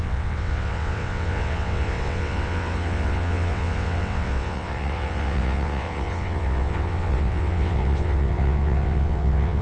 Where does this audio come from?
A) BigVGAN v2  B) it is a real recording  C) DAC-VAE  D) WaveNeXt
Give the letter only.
D